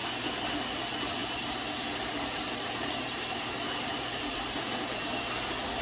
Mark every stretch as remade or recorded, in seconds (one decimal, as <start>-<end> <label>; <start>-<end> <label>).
0.0-1.2 recorded; 1.2-4.7 remade; 4.7-5.8 recorded